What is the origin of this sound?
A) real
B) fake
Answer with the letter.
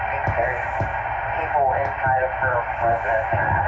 A